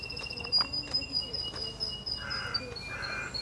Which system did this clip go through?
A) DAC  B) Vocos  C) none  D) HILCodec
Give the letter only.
C